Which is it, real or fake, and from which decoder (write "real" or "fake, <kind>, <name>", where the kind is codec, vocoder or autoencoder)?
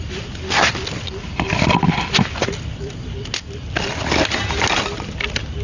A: real